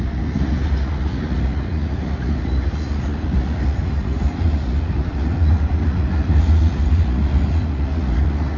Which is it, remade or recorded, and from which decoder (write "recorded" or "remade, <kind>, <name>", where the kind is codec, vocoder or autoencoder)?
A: remade, vocoder, Vocos